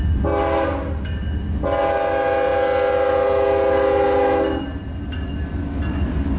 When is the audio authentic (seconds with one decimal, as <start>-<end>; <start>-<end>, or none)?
0.0-6.4